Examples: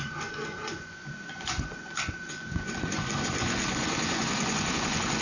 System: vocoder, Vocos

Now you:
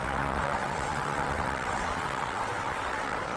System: vocoder, WaveNeXt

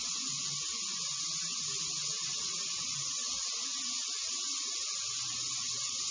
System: none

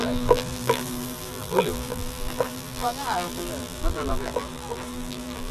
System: vocoder, BigVGAN v2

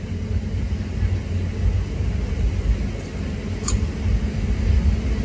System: none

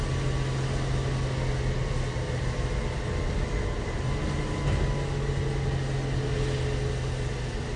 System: none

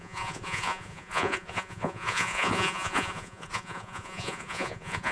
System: vocoder, Vocos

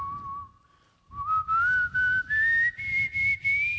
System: none